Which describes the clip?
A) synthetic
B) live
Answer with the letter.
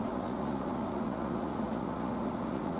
A